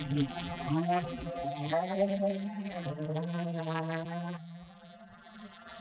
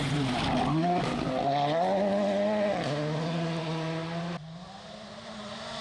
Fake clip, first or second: first